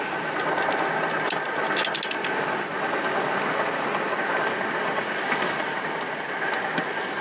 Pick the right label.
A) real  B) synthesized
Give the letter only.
A